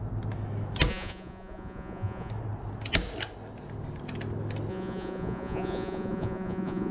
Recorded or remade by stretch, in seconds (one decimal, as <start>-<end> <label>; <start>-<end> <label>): 0.0-0.9 recorded; 0.9-2.3 remade; 2.3-4.7 recorded; 4.7-6.9 remade